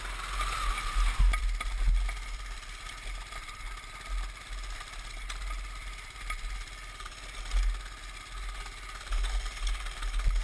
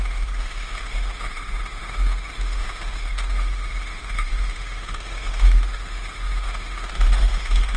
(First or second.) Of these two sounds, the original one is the first